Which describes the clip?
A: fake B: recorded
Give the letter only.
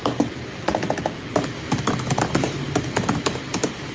B